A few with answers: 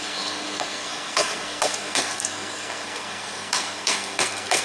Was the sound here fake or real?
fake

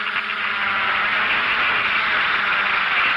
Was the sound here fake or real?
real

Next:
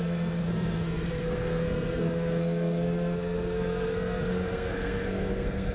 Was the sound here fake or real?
fake